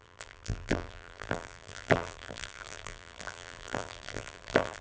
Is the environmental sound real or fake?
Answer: fake